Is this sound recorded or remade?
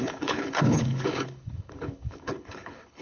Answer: remade